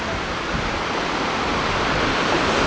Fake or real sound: real